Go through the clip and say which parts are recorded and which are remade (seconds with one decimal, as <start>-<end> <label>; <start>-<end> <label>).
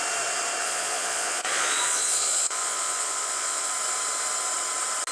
0.0-0.6 recorded; 0.6-3.7 remade; 3.7-5.1 recorded